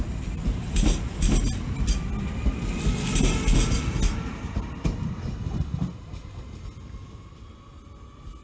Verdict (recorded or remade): recorded